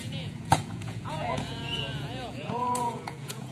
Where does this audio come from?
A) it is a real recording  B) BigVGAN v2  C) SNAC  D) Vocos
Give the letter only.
D